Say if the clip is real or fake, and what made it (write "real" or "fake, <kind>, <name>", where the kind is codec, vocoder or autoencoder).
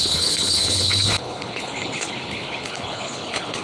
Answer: fake, codec, HILCodec